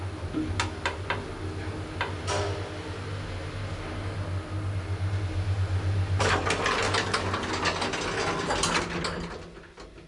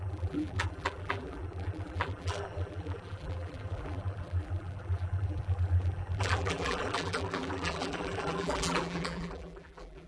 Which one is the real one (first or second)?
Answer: first